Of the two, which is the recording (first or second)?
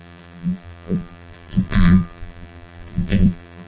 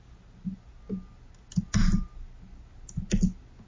second